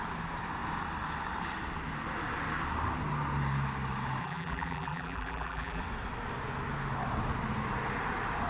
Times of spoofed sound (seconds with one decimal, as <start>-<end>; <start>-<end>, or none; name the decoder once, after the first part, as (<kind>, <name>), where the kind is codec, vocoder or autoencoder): 4.2-5.8 (vocoder, BigVGAN v2)

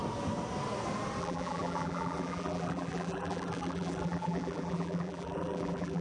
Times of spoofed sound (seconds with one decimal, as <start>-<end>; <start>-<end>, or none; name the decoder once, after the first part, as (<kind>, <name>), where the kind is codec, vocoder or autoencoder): 1.2-6.0 (vocoder, BigVGAN v2)

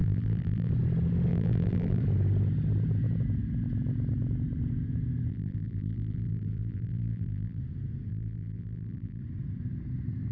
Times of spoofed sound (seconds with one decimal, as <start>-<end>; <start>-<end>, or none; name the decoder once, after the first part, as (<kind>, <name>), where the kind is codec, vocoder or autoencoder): 0.0-0.7 (vocoder, BigVGAN v2); 1.3-2.0; 5.3-7.6; 8.1-9.2